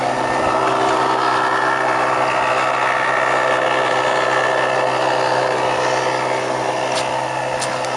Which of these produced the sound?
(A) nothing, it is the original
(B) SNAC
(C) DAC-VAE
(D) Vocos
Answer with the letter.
A